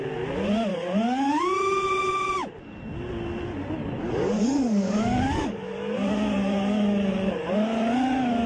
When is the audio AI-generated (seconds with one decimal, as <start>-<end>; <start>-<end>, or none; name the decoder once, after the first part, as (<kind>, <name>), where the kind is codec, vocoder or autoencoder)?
0.7-1.4 (codec, DAC); 4.0-8.5